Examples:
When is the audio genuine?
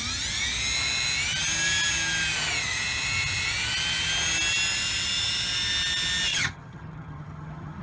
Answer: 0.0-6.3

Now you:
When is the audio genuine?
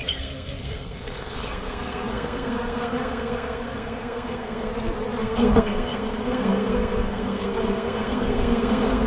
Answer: 4.7-5.2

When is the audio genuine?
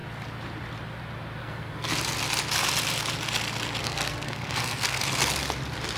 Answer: 0.0-1.4; 1.9-3.8; 5.0-6.0